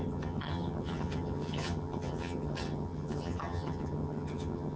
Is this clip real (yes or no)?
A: no